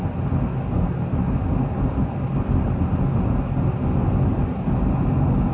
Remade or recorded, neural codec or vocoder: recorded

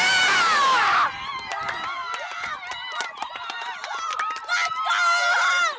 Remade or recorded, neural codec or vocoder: recorded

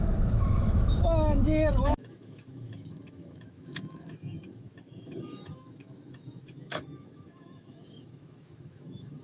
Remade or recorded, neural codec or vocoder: remade, autoencoder, DAC-VAE